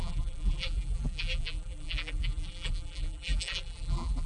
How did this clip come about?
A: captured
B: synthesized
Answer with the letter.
B